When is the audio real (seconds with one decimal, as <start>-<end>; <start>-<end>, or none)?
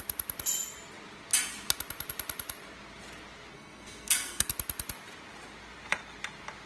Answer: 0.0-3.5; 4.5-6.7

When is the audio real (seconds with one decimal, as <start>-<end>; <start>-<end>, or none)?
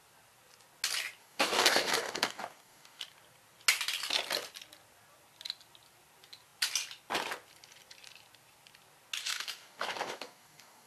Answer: 0.0-1.2; 3.0-9.2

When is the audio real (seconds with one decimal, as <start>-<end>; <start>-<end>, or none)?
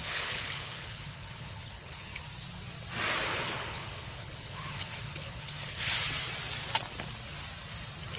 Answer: 2.2-3.3; 6.0-8.2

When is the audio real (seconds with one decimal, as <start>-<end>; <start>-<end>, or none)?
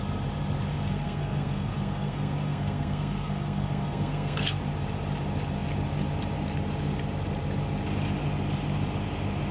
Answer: 0.0-0.9; 4.6-9.5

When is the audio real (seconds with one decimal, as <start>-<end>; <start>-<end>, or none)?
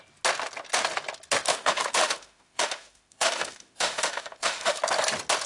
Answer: 0.0-1.5; 4.8-5.5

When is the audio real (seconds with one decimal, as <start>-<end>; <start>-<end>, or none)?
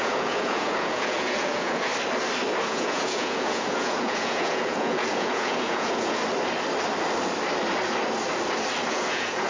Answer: 1.9-2.6; 6.2-8.9